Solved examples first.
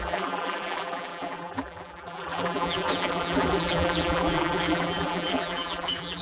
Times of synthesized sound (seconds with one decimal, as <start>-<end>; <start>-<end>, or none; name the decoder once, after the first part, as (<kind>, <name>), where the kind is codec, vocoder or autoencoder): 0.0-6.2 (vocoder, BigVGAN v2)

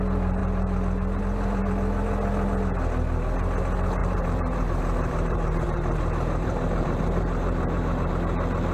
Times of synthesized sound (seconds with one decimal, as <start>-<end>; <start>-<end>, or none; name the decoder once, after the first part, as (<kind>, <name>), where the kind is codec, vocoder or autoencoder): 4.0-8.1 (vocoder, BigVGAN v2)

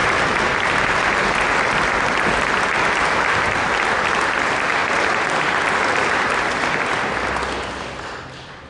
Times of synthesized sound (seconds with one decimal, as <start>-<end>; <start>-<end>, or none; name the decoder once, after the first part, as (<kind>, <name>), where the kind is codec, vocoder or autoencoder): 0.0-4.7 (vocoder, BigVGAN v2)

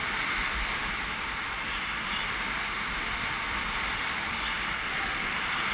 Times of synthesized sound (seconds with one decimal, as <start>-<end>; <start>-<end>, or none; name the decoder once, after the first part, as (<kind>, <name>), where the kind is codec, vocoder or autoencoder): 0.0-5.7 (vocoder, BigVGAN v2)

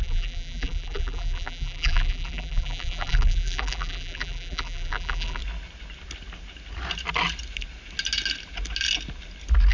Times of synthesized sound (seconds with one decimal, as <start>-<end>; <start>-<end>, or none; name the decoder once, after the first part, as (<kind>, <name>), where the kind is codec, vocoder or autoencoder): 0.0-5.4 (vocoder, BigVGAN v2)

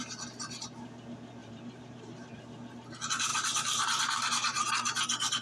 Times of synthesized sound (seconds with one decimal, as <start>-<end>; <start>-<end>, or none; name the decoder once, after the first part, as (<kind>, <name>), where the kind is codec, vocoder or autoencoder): 1.4-2.3 (vocoder, BigVGAN v2); 3.3-4.7

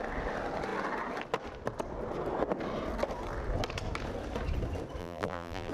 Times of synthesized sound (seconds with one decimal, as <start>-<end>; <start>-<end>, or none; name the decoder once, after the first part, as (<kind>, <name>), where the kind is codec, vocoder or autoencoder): 5.0-5.7 (vocoder, BigVGAN v2)

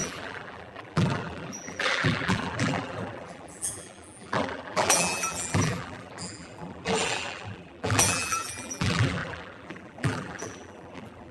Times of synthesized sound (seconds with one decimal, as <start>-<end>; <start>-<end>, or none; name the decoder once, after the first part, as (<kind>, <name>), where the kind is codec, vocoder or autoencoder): 0.0-11.3 (vocoder, BigVGAN v2)